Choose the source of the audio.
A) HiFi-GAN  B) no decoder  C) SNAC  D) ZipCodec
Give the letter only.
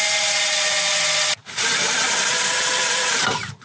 B